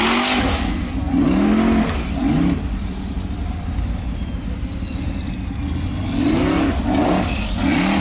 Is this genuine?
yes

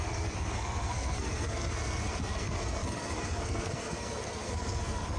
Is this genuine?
no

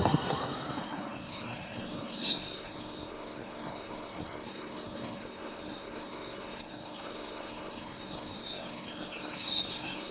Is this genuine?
no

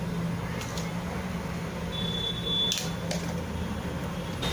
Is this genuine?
yes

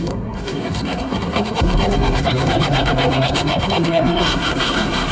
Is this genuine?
no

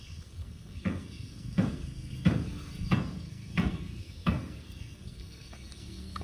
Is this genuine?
no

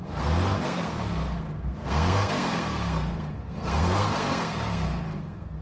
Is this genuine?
no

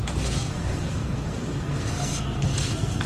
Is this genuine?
no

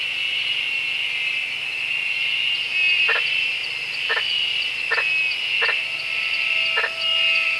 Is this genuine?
yes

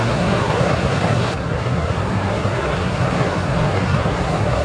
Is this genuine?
no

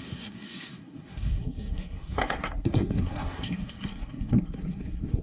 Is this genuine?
no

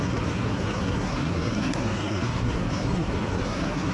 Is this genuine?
no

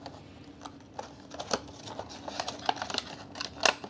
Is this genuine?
yes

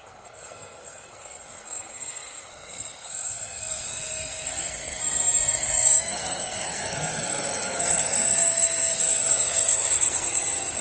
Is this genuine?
no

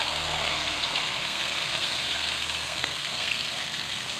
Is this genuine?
no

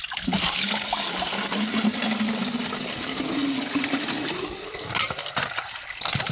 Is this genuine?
yes